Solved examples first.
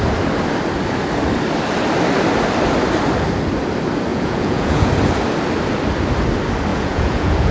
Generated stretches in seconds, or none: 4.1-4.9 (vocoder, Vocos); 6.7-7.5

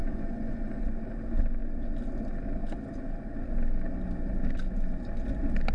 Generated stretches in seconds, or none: 0.0-0.8 (vocoder, Vocos)

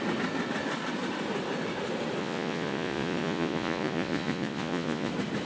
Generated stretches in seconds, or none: 2.2-5.1 (vocoder, Vocos)

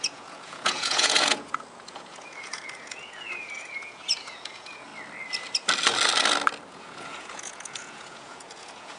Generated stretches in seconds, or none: 0.0-4.9 (vocoder, Vocos); 6.7-9.0

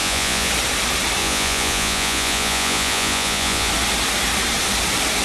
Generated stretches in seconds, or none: 0.0-0.5 (vocoder, Vocos); 1.2-3.7

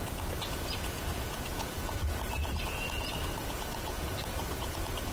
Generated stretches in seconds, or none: 0.0-5.1 (vocoder, Vocos)